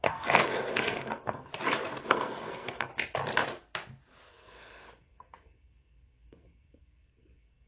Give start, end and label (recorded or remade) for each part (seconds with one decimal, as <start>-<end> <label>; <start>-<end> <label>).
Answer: 0.0-1.5 remade; 1.5-2.0 recorded; 2.0-2.9 remade; 2.9-4.3 recorded; 4.3-7.7 remade